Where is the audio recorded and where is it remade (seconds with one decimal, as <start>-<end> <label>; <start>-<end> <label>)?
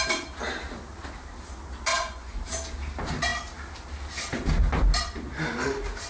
0.0-1.9 recorded; 1.9-2.4 remade; 2.4-6.1 recorded